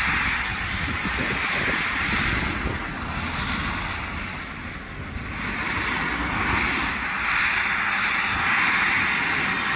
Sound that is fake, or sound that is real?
real